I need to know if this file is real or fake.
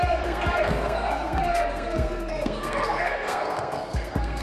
fake